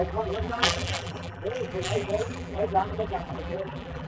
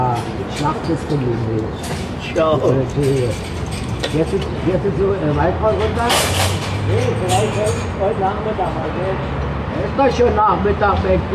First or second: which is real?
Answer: second